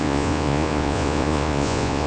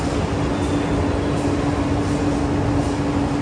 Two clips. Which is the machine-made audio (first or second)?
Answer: first